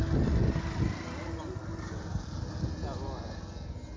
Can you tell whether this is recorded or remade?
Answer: recorded